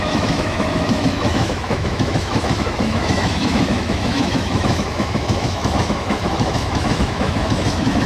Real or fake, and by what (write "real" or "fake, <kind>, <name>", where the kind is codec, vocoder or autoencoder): fake, autoencoder, DAC-VAE